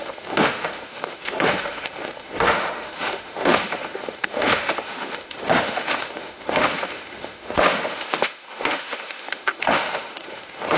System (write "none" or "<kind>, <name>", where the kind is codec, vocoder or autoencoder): autoencoder, DAC-VAE